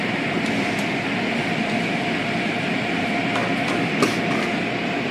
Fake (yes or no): no